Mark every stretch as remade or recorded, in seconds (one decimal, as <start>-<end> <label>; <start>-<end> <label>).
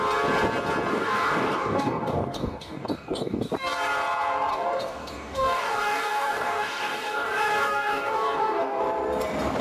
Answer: 0.0-0.9 recorded; 0.9-3.5 remade; 3.5-4.5 recorded; 4.5-8.8 remade; 8.8-9.6 recorded